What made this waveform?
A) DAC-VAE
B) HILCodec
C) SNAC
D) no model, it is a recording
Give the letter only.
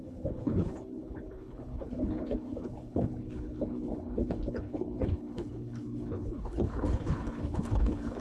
B